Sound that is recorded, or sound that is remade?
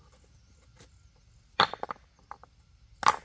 recorded